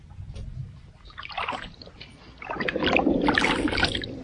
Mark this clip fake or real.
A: real